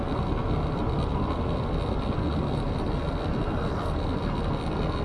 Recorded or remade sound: recorded